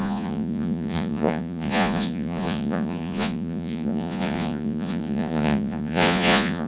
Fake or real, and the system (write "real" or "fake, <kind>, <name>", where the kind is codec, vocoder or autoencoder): fake, vocoder, Vocos